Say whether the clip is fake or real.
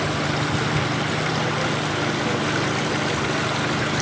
real